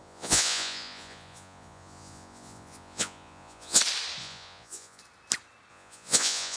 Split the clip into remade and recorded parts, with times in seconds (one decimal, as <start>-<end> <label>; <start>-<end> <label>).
0.0-3.8 remade; 3.8-4.2 recorded; 4.2-5.0 remade; 5.0-5.7 recorded; 5.7-6.6 remade